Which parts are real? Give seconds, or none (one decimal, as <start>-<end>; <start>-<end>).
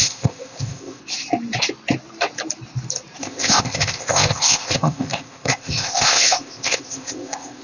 1.0-3.2